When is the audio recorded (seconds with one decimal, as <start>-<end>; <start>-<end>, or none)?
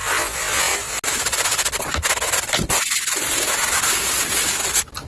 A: 0.0-5.1